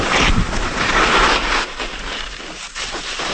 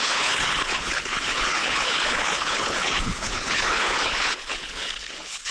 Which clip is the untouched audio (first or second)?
first